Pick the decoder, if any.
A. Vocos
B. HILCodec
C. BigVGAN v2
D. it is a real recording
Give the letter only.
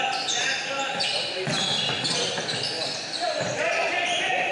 C